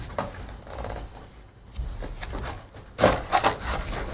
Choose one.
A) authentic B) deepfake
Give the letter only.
A